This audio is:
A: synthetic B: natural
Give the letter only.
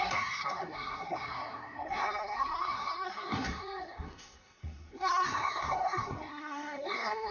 A